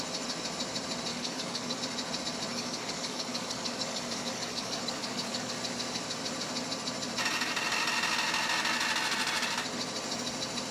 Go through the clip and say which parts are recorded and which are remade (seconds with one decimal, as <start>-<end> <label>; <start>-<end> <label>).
0.0-1.1 recorded; 1.1-1.8 remade; 1.8-2.5 recorded; 2.5-5.5 remade; 5.5-10.7 recorded